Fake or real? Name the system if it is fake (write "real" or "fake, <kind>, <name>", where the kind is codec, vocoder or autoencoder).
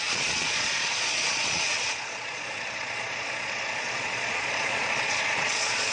fake, vocoder, Vocos